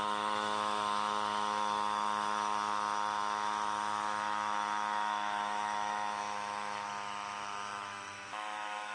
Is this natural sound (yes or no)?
no